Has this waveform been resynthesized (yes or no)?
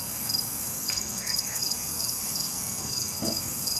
yes